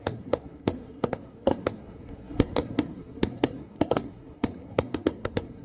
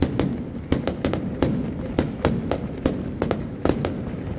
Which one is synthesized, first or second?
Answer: first